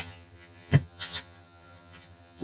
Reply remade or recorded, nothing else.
remade